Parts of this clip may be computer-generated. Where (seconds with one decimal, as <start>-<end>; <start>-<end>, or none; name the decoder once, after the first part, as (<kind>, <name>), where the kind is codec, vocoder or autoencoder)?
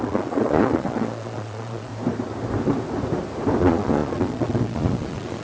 0.0-1.9 (vocoder, Vocos); 3.6-5.4